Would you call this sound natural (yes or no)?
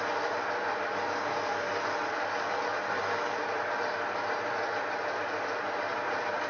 yes